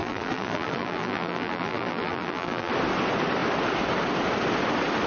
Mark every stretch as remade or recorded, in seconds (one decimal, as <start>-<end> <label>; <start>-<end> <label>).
0.0-2.7 remade; 2.7-5.1 recorded